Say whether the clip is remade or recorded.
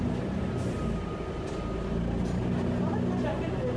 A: recorded